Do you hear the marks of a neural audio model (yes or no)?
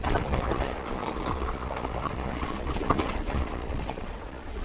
yes